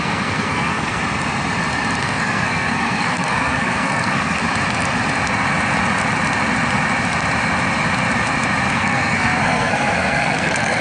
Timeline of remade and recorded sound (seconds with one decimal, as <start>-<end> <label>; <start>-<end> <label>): 0.0-1.0 remade; 1.0-2.0 recorded; 2.0-4.4 remade; 4.4-8.7 recorded; 8.7-10.8 remade